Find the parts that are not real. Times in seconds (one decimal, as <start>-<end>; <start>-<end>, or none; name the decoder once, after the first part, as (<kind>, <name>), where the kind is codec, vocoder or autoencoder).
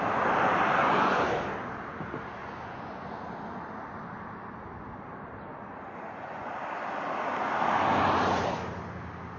0.8-1.3 (vocoder, Vocos); 2.4-3.0; 5.5-6.5